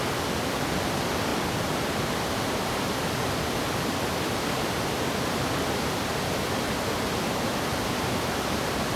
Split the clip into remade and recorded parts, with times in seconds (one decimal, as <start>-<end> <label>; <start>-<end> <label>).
0.0-1.3 recorded; 1.3-6.0 remade; 6.0-9.0 recorded

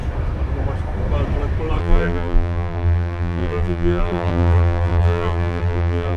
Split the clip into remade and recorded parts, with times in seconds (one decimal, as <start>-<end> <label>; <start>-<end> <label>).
0.0-1.8 recorded; 1.8-6.2 remade

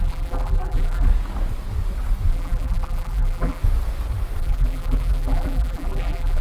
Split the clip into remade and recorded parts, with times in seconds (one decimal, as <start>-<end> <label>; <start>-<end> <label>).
0.0-1.1 remade; 1.1-2.3 recorded; 2.3-3.6 remade; 3.6-4.4 recorded; 4.4-6.4 remade

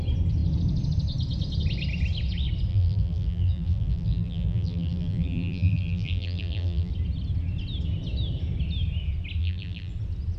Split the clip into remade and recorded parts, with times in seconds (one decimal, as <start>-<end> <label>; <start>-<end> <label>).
0.0-2.7 recorded; 2.7-6.9 remade; 6.9-9.4 recorded; 9.4-9.9 remade; 9.9-10.4 recorded